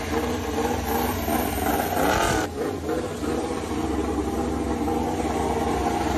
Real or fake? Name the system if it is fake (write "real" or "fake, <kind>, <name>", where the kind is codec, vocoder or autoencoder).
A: real